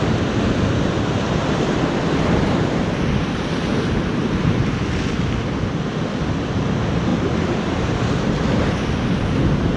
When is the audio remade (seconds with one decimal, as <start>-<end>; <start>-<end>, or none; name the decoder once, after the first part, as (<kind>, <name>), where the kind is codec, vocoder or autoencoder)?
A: 7.1-9.3 (vocoder, BigVGAN v2)